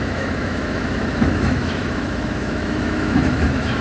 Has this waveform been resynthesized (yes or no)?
yes